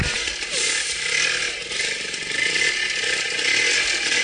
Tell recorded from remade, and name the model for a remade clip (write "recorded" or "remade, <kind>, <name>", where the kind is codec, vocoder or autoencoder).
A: recorded